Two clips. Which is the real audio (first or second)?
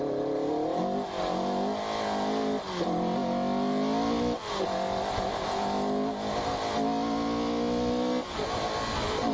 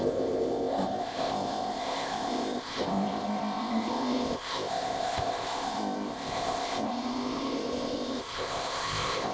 first